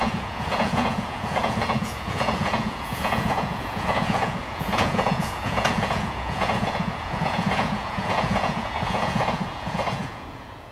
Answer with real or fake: fake